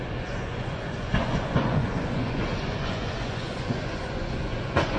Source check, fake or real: fake